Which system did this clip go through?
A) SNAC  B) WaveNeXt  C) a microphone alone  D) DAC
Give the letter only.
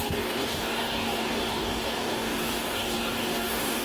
D